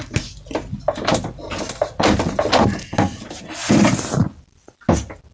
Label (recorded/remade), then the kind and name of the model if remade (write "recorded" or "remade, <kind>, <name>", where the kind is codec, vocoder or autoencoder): recorded